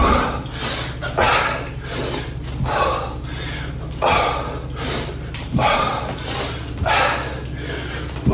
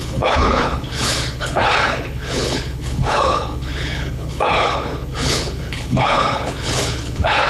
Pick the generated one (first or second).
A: second